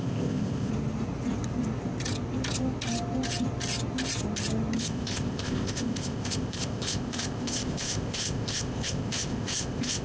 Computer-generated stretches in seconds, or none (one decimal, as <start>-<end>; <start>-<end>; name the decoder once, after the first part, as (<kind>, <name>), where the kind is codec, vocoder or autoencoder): 0.0-0.7 (codec, ZipCodec); 4.8-10.0